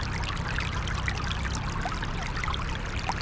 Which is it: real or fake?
real